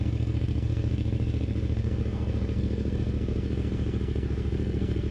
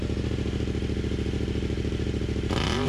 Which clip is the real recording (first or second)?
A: second